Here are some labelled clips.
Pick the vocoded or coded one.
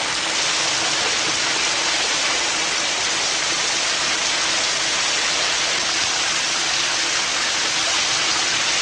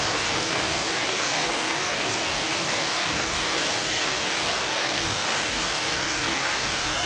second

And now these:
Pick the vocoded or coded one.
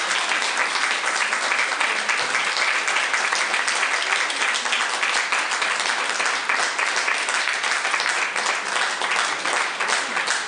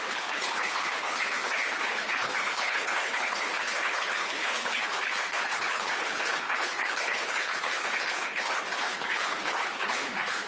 second